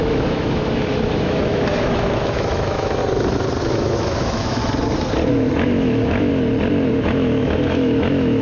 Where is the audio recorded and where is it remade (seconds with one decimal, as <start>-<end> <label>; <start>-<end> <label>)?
0.0-3.0 remade; 3.0-3.6 recorded; 3.6-4.6 remade; 4.6-5.3 recorded; 5.3-6.3 remade; 6.3-6.9 recorded; 6.9-8.4 remade